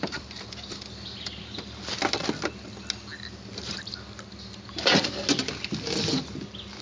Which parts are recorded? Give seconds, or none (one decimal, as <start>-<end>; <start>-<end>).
0.0-6.8